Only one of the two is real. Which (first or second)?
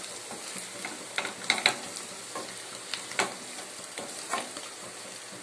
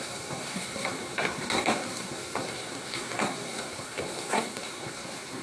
first